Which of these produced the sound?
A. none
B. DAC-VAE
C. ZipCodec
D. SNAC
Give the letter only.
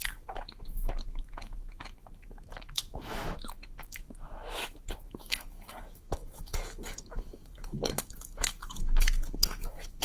B